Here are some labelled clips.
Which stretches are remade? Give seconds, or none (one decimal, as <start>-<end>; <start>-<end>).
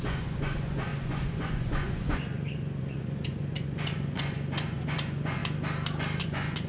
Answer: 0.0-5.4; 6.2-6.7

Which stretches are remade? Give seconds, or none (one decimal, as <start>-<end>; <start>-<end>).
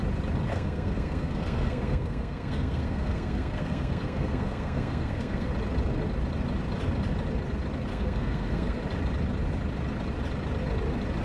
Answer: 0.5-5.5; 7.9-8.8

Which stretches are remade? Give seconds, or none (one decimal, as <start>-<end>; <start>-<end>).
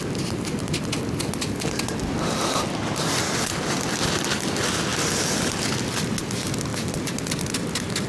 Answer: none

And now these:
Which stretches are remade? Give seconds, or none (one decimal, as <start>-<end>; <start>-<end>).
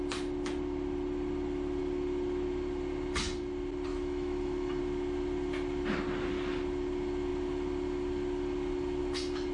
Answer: 3.9-4.8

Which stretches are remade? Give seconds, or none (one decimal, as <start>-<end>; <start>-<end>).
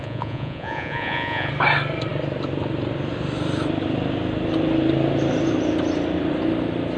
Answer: 0.0-1.5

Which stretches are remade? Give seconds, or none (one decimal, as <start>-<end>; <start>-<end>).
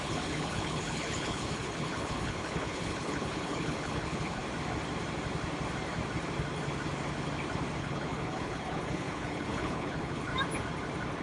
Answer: 0.0-4.4; 7.8-10.3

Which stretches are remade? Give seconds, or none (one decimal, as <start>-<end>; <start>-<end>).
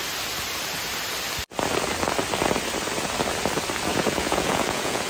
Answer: 3.9-5.1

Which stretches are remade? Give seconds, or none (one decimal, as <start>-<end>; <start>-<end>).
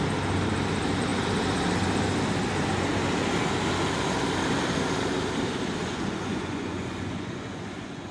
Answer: 5.8-8.1